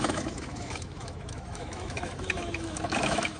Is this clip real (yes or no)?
no